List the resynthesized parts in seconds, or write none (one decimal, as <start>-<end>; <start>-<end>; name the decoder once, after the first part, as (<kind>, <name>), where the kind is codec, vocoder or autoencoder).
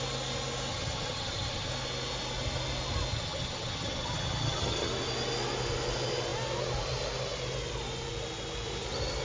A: 0.7-1.7 (vocoder, HiFi-GAN); 3.1-4.9